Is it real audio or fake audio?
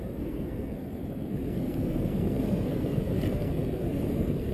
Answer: fake